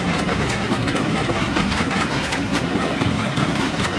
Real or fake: fake